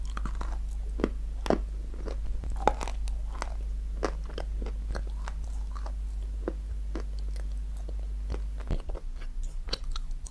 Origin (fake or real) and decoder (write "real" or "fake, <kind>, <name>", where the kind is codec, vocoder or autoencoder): real